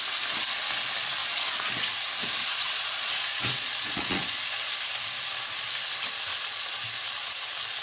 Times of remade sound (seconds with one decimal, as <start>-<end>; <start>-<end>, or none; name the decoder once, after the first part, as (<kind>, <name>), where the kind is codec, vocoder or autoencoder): 1.2-1.7 (vocoder, Vocos); 2.4-4.7; 6.3-6.8